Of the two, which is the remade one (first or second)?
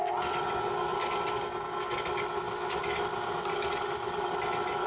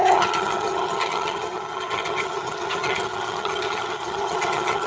second